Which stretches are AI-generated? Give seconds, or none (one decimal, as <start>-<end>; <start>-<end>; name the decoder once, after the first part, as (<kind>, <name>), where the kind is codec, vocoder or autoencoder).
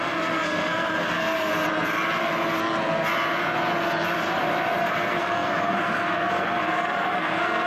0.0-1.5 (codec, SNAC); 4.8-7.7